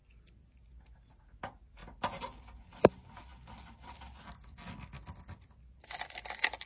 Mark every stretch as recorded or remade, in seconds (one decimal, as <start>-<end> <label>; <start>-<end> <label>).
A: 0.0-6.7 recorded